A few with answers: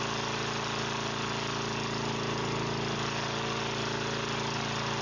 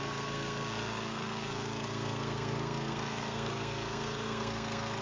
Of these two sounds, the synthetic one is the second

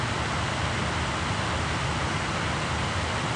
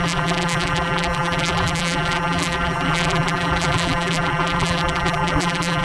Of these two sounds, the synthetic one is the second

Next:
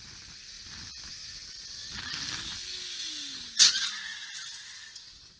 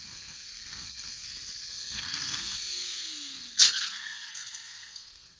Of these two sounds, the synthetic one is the second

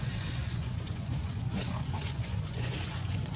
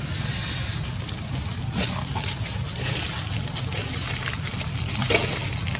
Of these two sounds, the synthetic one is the first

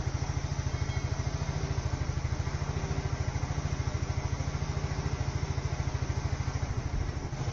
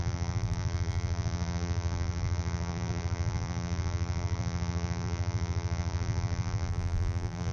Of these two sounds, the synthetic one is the second